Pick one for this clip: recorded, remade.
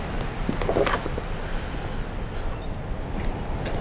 recorded